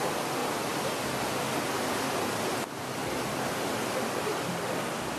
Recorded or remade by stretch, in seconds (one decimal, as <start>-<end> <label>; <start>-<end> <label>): 0.0-0.4 recorded; 0.4-0.9 remade; 0.9-5.2 recorded